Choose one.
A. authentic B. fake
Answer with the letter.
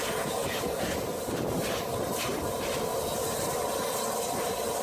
A